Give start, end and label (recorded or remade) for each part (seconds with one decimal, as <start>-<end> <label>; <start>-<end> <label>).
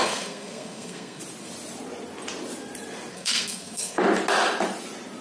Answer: 0.0-1.2 remade; 1.2-3.1 recorded; 3.1-4.0 remade; 4.0-5.2 recorded